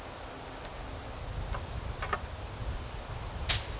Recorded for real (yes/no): yes